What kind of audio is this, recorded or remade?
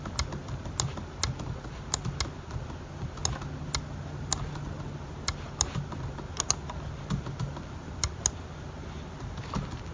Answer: recorded